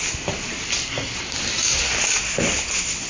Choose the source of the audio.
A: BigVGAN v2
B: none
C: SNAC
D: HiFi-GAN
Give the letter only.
B